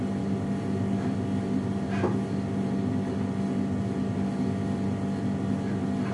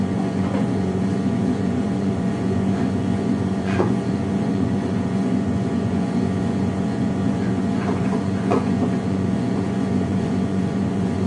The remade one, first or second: second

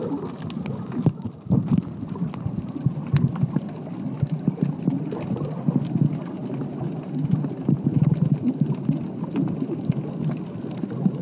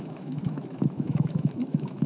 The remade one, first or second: second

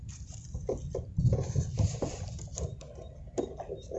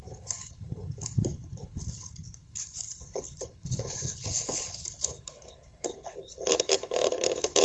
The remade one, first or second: second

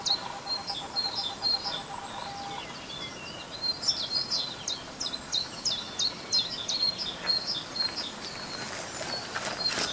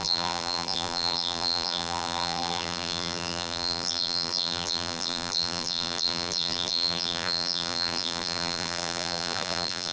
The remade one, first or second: second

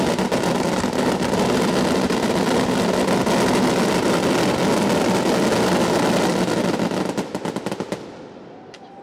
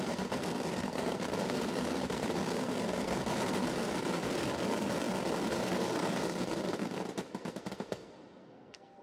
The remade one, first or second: second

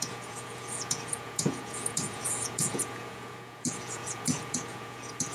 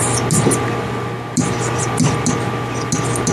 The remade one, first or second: first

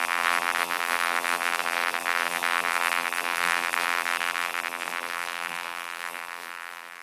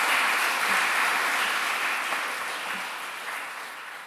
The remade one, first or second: first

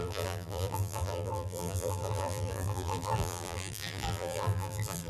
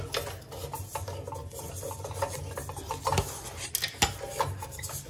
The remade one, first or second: first